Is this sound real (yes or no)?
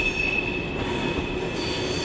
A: yes